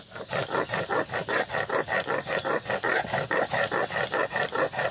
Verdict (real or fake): real